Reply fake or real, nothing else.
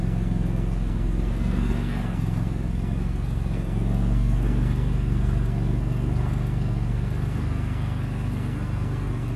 fake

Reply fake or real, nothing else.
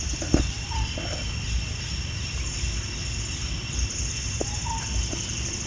real